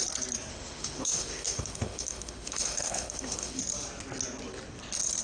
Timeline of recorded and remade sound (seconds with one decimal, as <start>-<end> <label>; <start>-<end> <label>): 0.0-0.5 recorded; 0.5-3.6 remade; 3.6-5.2 recorded